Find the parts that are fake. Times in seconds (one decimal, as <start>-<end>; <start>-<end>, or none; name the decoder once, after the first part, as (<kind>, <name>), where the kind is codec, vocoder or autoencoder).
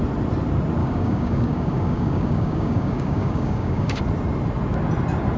0.8-4.0 (codec, DAC)